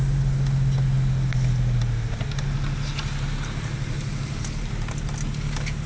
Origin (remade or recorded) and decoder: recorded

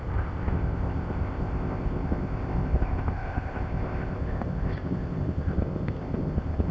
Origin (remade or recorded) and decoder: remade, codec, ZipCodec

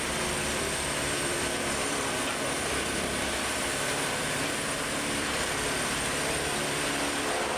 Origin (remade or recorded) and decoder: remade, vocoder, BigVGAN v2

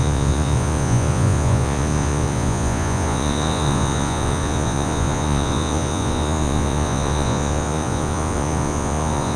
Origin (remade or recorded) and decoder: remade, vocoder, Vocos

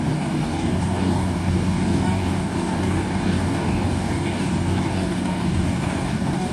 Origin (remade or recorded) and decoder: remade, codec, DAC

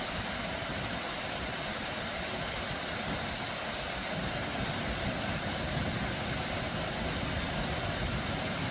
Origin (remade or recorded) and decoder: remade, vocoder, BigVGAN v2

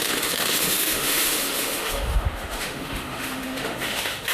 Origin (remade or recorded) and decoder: remade, autoencoder, DAC-VAE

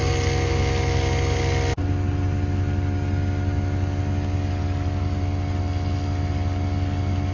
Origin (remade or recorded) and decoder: recorded